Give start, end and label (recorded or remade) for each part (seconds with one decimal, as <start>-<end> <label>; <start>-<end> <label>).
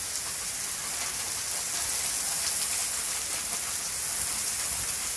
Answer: 0.0-5.2 recorded